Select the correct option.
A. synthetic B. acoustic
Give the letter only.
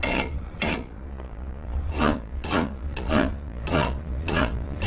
A